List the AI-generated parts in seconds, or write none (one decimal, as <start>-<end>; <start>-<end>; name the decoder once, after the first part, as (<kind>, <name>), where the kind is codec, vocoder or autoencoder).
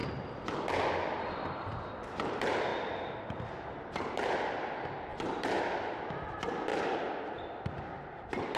0.0-1.7 (vocoder, BigVGAN v2); 2.7-3.2; 5.1-5.9; 6.7-7.2